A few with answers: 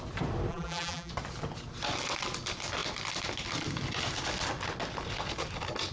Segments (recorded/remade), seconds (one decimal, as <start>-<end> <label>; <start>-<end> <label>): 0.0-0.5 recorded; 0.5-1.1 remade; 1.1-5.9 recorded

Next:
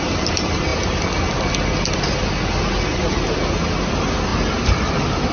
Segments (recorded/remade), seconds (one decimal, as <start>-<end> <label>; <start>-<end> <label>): 0.0-5.3 recorded

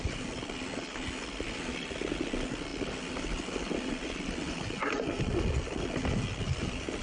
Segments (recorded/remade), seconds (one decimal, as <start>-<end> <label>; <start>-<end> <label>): 0.0-7.0 recorded